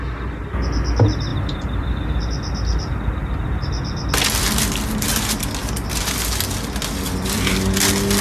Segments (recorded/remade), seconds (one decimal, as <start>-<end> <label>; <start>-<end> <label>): 0.0-8.2 recorded